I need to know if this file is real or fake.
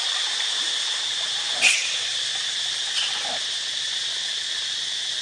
real